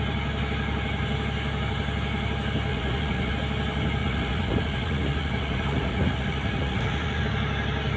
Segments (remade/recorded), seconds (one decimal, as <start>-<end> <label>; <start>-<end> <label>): 0.0-2.7 recorded; 2.7-3.3 remade; 3.3-4.0 recorded; 4.0-7.2 remade; 7.2-8.0 recorded